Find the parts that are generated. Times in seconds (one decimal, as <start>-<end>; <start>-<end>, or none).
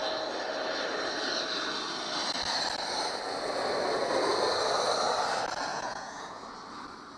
5.7-6.4